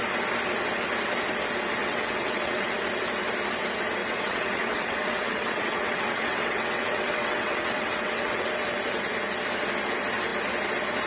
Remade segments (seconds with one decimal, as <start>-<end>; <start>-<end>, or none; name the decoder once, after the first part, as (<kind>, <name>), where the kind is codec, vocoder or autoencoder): 1.8-2.7 (vocoder, WaveNeXt); 4.0-8.5